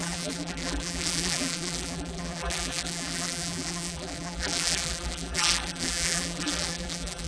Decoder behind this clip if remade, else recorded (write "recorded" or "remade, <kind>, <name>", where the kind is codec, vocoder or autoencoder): remade, vocoder, BigVGAN v2